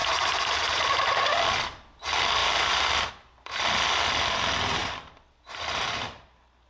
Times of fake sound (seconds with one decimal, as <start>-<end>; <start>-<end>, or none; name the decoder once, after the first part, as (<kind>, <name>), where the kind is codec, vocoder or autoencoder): 0.0-1.2 (vocoder, BigVGAN v2); 2.4-3.1; 4.8-5.5